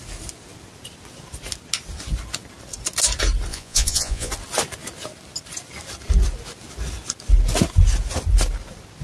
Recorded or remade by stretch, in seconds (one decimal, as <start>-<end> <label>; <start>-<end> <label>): 0.0-3.5 recorded; 3.5-4.3 remade; 4.3-9.0 recorded